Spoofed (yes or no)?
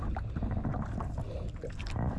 no